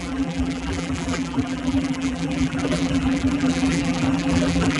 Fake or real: fake